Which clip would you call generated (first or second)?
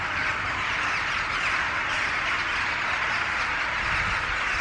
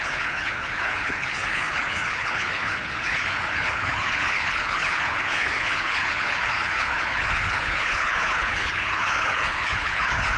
second